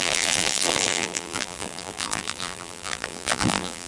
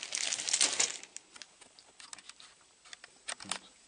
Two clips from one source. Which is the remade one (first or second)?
first